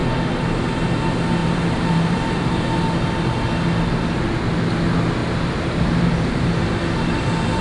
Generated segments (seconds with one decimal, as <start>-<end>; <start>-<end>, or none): 1.4-2.6; 5.2-6.5